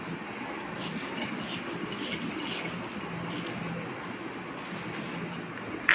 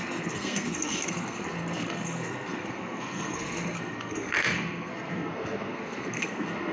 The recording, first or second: first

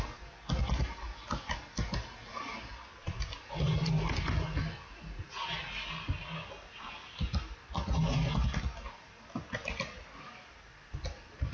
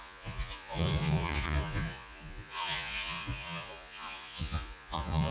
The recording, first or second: first